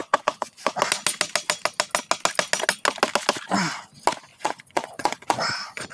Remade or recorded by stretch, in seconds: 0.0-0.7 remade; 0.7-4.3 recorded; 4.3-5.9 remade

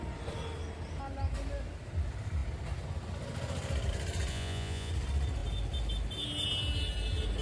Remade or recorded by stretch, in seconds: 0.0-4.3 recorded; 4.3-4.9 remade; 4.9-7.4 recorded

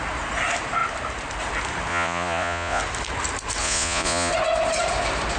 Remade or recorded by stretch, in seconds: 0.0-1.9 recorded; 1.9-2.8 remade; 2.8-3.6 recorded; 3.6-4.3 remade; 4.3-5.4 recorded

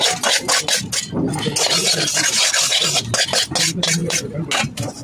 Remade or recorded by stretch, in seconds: 0.0-5.0 recorded

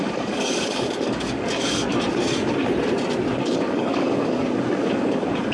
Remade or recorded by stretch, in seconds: 0.0-1.9 remade; 1.9-3.4 recorded; 3.4-5.5 remade